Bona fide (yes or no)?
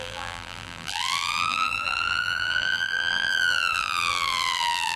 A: no